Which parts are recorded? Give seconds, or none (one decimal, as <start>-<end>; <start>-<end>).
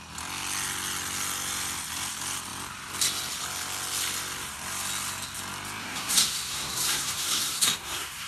0.0-5.8